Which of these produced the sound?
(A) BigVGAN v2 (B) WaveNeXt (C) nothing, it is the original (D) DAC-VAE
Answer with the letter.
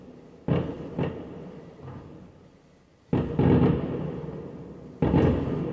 C